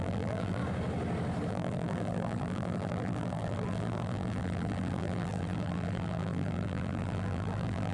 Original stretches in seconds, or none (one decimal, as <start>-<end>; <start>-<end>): 0.6-1.5